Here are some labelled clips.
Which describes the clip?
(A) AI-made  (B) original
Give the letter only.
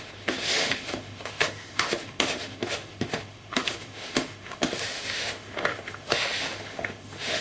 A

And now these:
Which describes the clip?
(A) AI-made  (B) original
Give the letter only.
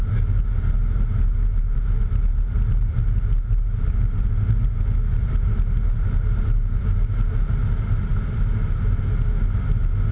B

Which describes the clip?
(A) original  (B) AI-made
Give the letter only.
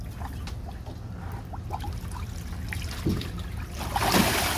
A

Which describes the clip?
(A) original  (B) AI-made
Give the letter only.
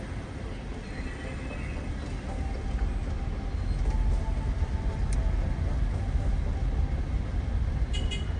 A